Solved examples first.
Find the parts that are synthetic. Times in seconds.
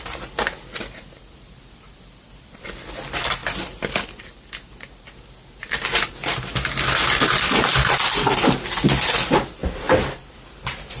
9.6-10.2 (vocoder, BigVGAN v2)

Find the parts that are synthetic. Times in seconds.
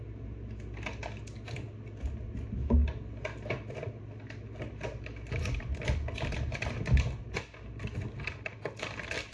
none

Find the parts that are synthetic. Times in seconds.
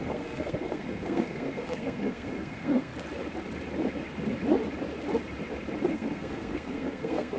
0.0-2.9 (codec, SNAC); 5.9-7.4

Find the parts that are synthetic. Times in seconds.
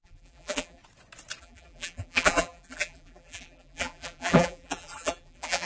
0.0-0.8 (vocoder, BigVGAN v2); 1.4-5.6